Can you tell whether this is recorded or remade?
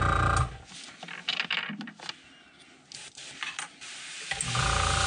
recorded